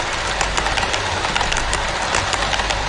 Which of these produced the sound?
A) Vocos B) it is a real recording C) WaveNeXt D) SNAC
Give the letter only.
B